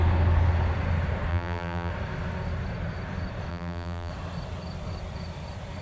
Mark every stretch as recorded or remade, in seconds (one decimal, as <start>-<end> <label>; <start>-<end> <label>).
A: 0.0-1.3 recorded; 1.3-1.9 remade; 1.9-3.5 recorded; 3.5-4.1 remade; 4.1-5.8 recorded